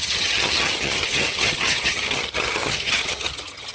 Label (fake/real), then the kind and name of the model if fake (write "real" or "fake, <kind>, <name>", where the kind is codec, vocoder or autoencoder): fake, vocoder, HiFi-GAN